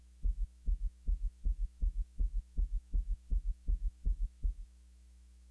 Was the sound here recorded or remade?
remade